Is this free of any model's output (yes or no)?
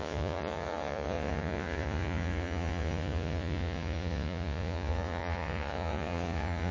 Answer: no